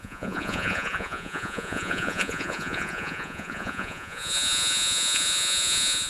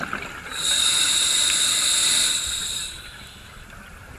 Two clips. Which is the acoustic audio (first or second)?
second